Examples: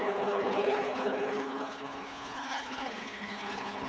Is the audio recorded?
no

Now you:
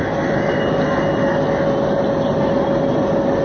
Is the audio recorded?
yes